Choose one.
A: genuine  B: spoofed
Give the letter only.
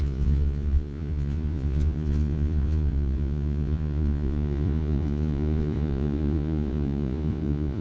B